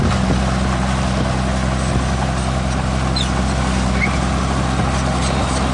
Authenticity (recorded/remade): recorded